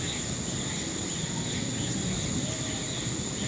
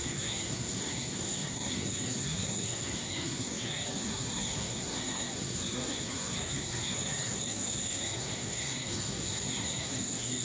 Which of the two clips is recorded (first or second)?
first